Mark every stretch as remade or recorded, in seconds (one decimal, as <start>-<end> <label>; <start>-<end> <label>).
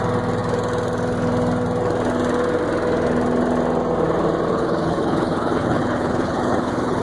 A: 0.0-4.5 recorded; 4.5-7.0 remade